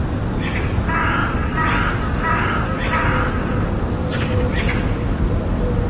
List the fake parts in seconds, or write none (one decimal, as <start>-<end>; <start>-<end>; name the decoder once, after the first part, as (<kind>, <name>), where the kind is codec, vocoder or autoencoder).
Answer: 1.2-3.3 (vocoder, BigVGAN v2); 4.0-5.9